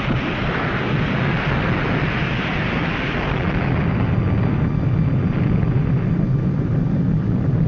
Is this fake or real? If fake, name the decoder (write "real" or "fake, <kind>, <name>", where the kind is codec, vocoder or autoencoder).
real